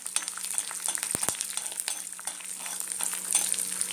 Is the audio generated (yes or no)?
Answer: no